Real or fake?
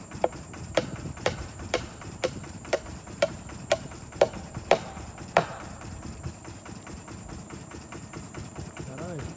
fake